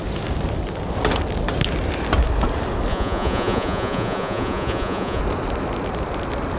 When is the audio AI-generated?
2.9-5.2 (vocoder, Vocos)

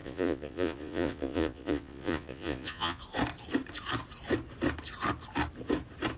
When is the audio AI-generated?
0.0-3.0 (vocoder, Vocos)

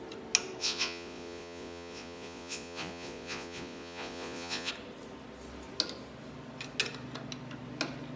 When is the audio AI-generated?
0.6-4.7 (vocoder, Vocos)

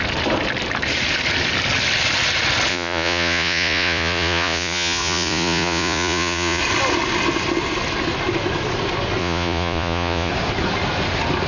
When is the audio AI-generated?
2.7-6.6 (vocoder, Vocos); 9.2-10.3

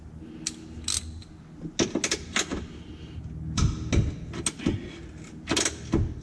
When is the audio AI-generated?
none

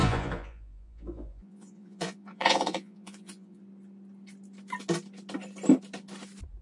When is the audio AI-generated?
0.0-3.6 (vocoder, Vocos)